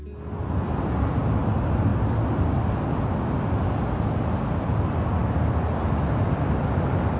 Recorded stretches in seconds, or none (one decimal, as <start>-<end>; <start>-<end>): 0.0-7.2